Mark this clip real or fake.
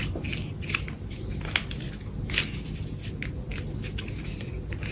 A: real